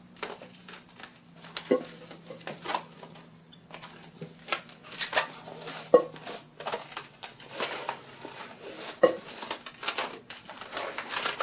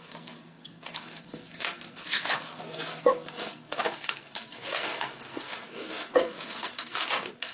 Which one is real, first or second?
first